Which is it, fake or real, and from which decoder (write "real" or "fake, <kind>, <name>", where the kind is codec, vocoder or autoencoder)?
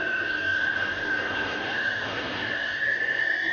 fake, codec, SNAC